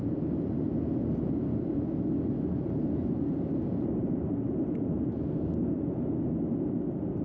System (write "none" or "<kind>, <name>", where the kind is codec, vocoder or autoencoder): none